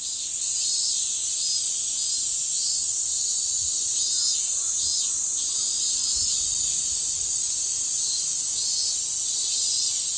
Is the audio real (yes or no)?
yes